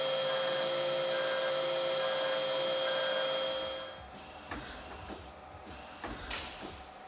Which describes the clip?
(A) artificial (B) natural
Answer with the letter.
B